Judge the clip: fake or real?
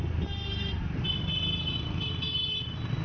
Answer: real